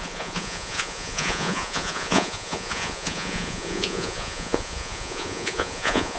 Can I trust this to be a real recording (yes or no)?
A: no